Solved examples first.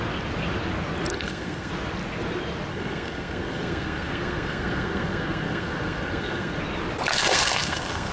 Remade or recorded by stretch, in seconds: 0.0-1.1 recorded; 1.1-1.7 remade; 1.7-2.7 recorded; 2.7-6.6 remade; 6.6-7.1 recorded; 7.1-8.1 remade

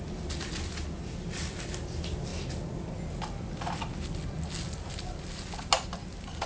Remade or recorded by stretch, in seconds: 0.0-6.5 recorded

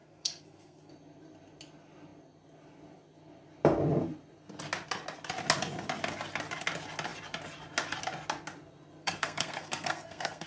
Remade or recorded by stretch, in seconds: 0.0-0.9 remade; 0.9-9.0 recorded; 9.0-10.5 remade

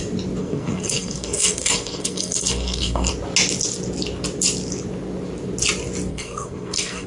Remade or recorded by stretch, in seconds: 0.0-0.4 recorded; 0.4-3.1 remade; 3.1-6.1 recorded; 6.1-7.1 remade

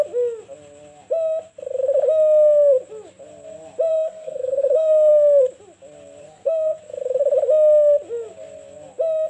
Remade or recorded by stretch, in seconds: 0.0-3.9 recorded; 3.9-5.1 remade; 5.1-6.2 recorded; 6.2-6.8 remade; 6.8-9.3 recorded

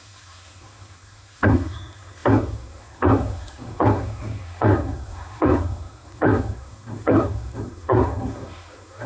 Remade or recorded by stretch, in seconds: 0.0-9.1 remade

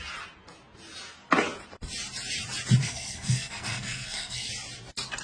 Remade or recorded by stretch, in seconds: 0.0-2.8 recorded; 2.8-4.5 remade; 4.5-5.2 recorded